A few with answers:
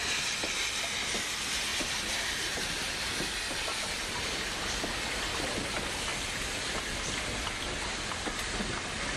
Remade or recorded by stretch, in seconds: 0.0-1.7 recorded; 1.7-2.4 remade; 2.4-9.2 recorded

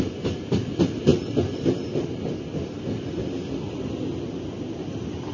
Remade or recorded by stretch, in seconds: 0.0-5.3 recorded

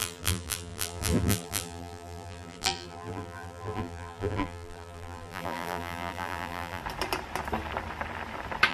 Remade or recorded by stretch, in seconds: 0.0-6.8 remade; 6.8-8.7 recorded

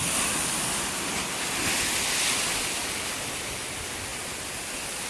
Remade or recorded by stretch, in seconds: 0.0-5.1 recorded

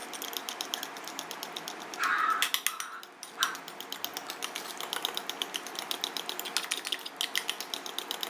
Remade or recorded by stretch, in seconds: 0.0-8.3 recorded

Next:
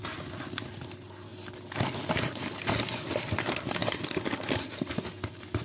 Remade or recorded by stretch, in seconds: 0.0-3.8 recorded; 3.8-5.1 remade; 5.1-5.6 recorded

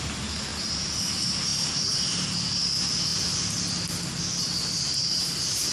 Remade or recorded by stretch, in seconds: 0.0-1.5 recorded; 1.5-2.6 remade; 2.6-5.7 recorded

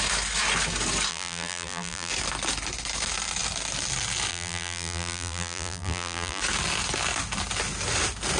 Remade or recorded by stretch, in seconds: 0.0-1.1 recorded; 1.1-2.1 remade; 2.1-4.3 recorded; 4.3-6.4 remade; 6.4-8.4 recorded